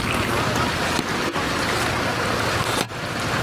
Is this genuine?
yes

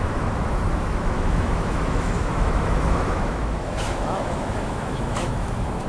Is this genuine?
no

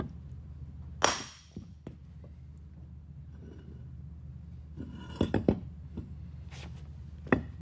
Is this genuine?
yes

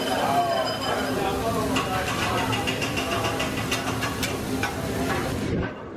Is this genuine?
yes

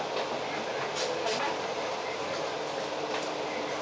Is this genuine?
yes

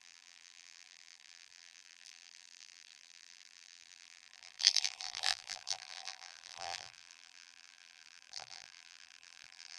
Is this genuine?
no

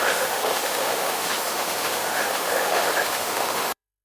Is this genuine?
no